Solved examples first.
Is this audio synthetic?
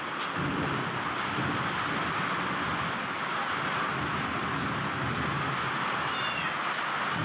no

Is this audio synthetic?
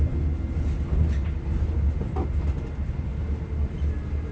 no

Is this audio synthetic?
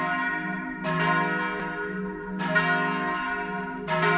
no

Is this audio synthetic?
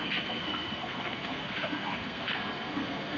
yes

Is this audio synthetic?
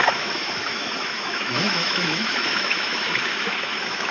yes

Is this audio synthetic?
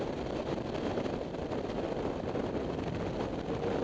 no